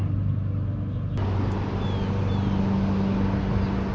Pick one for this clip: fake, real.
real